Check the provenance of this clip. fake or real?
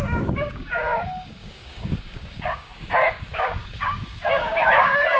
fake